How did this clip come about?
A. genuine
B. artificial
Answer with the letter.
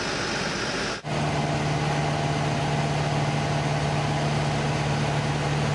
A